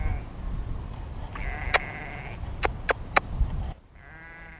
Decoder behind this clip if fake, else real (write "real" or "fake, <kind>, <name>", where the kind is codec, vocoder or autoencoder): real